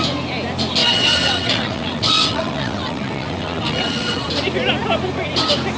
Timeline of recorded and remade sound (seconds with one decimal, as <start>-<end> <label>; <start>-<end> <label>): 0.0-0.8 recorded; 0.8-4.3 remade; 4.3-5.8 recorded